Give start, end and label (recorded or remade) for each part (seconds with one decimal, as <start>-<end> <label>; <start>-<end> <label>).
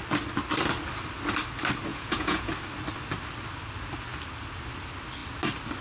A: 0.0-1.9 recorded; 1.9-2.5 remade; 2.5-5.8 recorded